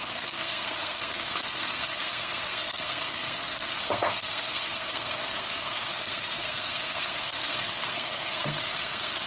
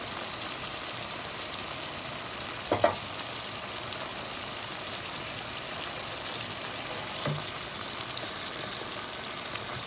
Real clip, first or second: second